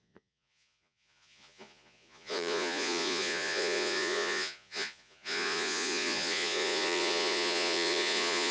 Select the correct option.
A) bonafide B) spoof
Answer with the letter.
B